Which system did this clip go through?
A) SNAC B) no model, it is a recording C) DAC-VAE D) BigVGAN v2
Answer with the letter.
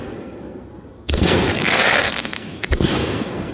A